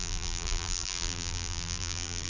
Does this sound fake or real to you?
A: fake